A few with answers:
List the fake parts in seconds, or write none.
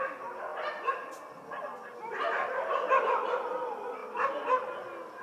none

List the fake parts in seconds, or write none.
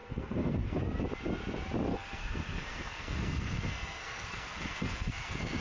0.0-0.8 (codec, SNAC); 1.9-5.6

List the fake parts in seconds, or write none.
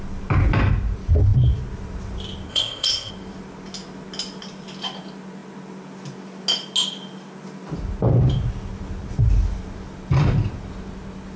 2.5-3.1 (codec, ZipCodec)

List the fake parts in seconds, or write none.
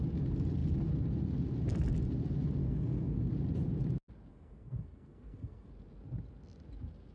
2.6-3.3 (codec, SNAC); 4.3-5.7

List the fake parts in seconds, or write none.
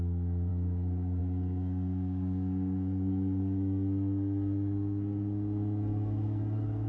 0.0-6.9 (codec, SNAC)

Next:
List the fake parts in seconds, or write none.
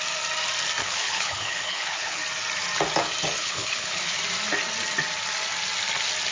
0.8-2.2 (codec, HILCodec); 3.4-4.2